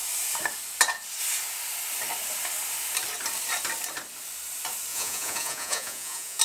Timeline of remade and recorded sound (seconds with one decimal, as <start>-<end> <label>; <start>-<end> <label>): 0.0-4.9 recorded; 4.9-6.4 remade